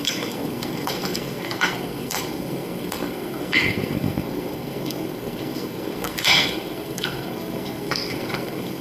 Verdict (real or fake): fake